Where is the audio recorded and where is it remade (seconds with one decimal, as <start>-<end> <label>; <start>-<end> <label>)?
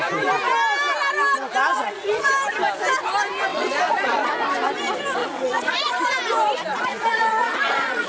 0.0-1.7 recorded; 1.7-2.3 remade; 2.3-3.5 recorded; 3.5-4.3 remade; 4.3-5.2 recorded; 5.2-6.1 remade; 6.1-6.7 recorded; 6.7-8.1 remade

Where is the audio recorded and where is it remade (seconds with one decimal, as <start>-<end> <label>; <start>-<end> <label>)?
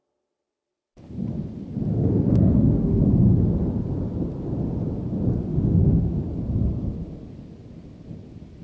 0.0-1.9 recorded; 1.9-3.0 remade; 3.0-5.5 recorded; 5.5-6.2 remade; 6.2-8.6 recorded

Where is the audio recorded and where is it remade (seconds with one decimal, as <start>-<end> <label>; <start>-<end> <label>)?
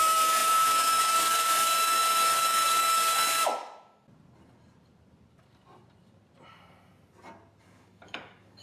0.0-3.4 remade; 3.4-7.6 recorded; 7.6-8.6 remade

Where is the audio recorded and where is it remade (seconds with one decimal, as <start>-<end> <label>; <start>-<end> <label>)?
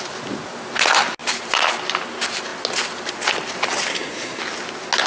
0.0-3.9 recorded; 3.9-4.4 remade; 4.4-5.1 recorded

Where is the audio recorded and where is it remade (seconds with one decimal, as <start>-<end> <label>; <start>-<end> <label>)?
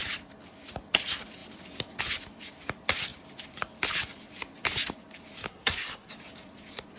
0.0-5.5 recorded; 5.5-6.1 remade; 6.1-7.0 recorded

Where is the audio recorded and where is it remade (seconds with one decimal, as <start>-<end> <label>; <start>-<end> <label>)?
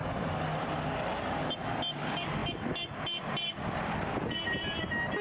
0.0-5.2 recorded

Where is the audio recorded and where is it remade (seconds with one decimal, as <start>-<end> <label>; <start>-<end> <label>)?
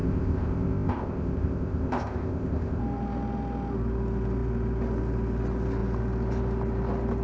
0.0-2.8 remade; 2.8-7.2 recorded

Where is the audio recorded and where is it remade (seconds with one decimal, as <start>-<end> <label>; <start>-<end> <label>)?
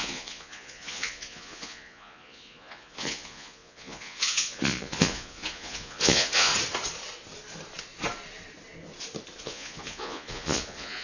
0.0-6.5 remade; 6.5-9.4 recorded; 9.4-11.0 remade